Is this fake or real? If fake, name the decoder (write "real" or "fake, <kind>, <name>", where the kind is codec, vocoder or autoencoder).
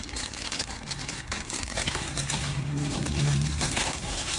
fake, codec, SNAC